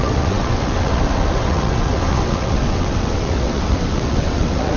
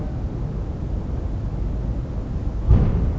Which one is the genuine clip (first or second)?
second